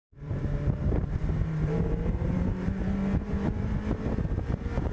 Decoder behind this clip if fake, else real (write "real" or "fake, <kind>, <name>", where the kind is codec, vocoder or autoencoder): fake, vocoder, BigVGAN v2